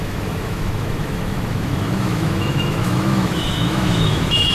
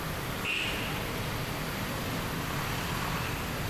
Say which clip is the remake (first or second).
first